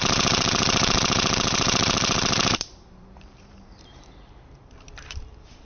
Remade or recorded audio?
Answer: remade